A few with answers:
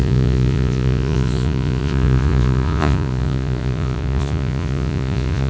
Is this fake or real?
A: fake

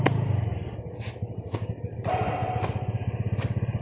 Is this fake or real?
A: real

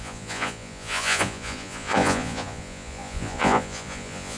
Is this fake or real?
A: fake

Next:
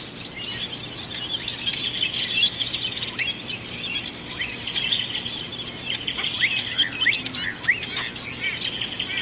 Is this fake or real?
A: real